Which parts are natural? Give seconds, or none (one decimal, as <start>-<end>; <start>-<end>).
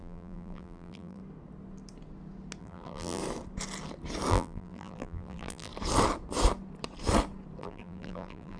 1.2-2.6; 3.2-4.3; 5.7-7.6